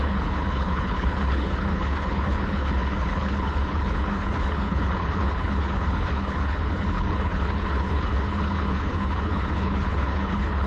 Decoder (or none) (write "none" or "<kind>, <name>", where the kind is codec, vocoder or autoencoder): codec, HILCodec